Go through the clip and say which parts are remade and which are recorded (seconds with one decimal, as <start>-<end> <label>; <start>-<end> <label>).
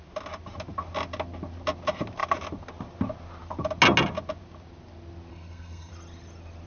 0.0-5.3 recorded; 5.3-5.9 remade; 5.9-6.7 recorded